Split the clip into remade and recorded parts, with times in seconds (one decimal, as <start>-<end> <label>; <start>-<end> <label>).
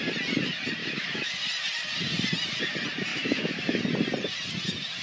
0.0-0.8 recorded; 0.8-1.3 remade; 1.3-3.1 recorded; 3.1-3.8 remade; 3.8-5.0 recorded